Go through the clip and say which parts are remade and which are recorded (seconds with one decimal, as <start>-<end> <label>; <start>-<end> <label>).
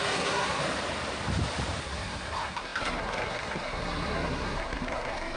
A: 0.0-0.6 remade; 0.6-1.8 recorded; 1.8-5.4 remade